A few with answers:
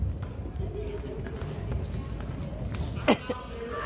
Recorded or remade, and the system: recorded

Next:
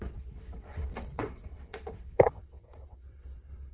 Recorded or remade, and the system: remade, vocoder, WaveNeXt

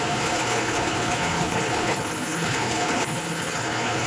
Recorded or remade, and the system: remade, codec, HILCodec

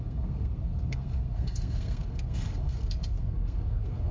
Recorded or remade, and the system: remade, codec, SNAC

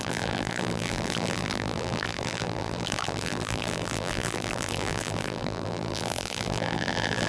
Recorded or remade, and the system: remade, vocoder, BigVGAN v2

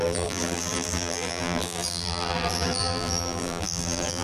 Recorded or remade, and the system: remade, vocoder, BigVGAN v2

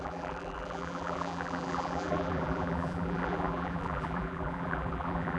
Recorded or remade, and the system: remade, vocoder, BigVGAN v2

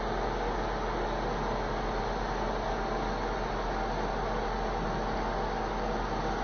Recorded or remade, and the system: recorded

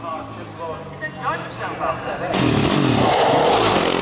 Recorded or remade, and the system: recorded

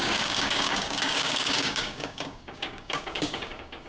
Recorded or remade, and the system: remade, codec, DAC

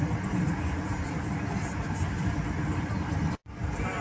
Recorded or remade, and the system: recorded